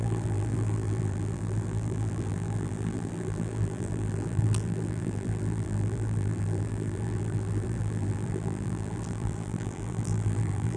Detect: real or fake fake